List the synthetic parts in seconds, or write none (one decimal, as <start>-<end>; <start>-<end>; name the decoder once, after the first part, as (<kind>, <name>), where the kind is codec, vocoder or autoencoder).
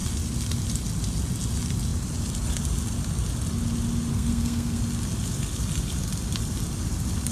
4.1-4.8 (codec, SNAC)